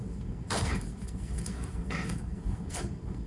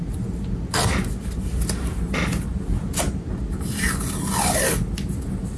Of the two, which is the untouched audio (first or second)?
second